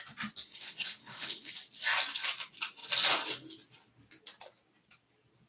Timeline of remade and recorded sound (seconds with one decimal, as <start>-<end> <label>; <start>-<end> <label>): 0.0-0.5 recorded; 0.5-1.5 remade; 1.5-5.5 recorded